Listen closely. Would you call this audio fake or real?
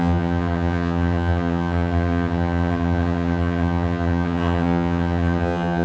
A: fake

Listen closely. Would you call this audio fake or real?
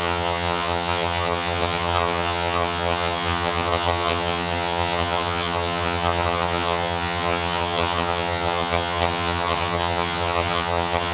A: fake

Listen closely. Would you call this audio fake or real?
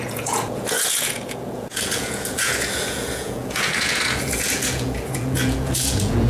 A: fake